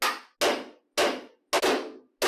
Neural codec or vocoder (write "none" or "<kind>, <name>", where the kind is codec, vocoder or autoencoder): none